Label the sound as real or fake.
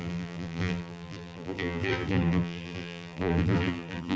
fake